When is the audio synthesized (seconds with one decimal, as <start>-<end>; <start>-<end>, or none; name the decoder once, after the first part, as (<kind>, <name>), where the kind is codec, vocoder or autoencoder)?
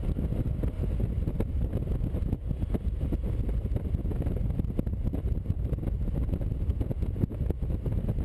6.7-7.4 (vocoder, Vocos)